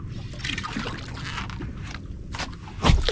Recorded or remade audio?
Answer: recorded